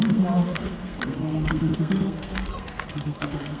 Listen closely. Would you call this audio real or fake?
fake